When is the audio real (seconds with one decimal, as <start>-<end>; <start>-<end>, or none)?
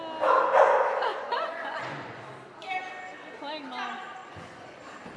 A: 0.0-1.1; 2.2-4.2; 4.8-5.2